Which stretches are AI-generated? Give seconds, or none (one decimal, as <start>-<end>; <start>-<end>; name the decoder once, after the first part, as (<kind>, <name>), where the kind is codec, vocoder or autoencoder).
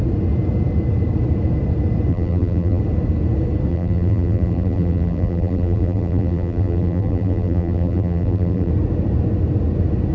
2.1-2.8 (vocoder, BigVGAN v2); 3.7-8.7